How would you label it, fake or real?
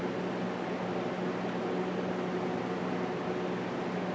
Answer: real